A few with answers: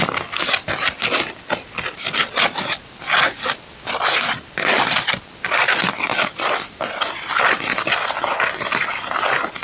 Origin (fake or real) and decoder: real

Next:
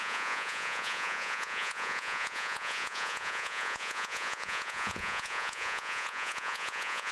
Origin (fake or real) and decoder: fake, vocoder, Vocos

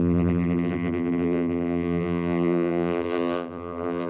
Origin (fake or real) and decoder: fake, vocoder, BigVGAN v2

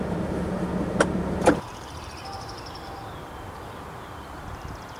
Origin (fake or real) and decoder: fake, vocoder, BigVGAN v2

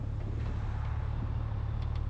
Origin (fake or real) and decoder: real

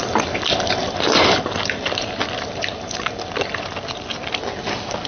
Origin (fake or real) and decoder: real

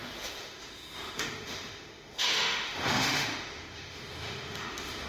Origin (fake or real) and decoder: fake, autoencoder, DAC-VAE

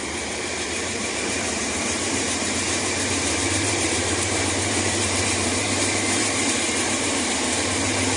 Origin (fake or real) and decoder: fake, vocoder, BigVGAN v2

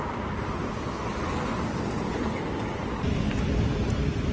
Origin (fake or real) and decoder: real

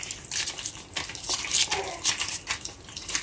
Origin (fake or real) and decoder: real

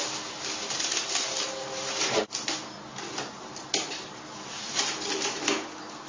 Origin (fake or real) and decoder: real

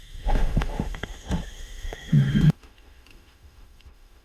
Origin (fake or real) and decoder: fake, autoencoder, DAC-VAE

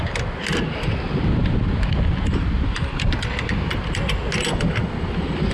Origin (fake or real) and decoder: real